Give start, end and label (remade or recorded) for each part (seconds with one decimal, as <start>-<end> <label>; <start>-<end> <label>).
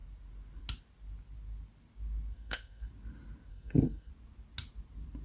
0.0-2.3 recorded; 2.3-2.9 remade; 2.9-3.5 recorded; 3.5-4.1 remade; 4.1-5.2 recorded